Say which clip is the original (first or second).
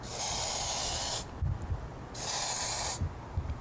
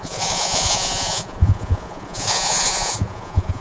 first